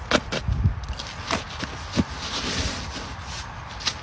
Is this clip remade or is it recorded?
recorded